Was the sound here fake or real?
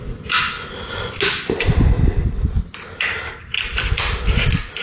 real